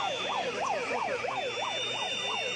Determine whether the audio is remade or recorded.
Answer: recorded